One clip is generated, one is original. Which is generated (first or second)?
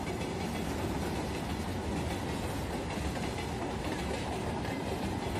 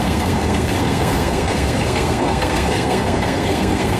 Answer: second